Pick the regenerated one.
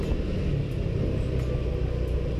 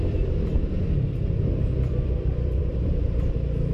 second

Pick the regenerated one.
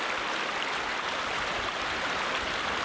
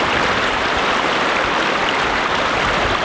second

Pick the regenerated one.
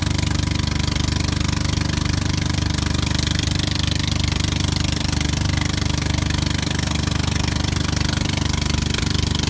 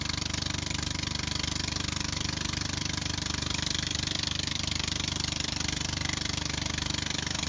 second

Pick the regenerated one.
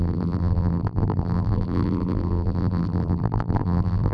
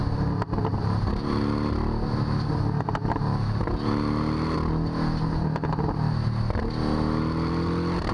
first